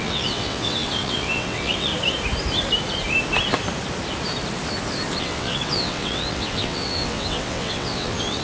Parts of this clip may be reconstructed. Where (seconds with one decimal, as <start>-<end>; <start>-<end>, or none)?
0.0-1.9; 5.2-8.4